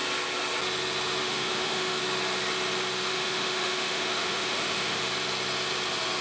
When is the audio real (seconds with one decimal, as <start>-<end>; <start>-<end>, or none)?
0.0-1.2; 2.0-3.1; 5.0-6.2